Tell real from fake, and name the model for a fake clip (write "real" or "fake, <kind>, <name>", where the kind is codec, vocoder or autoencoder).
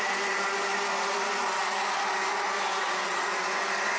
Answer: real